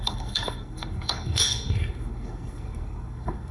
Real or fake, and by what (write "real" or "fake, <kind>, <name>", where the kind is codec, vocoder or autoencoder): fake, codec, SNAC